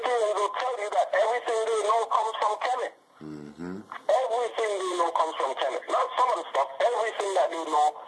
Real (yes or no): yes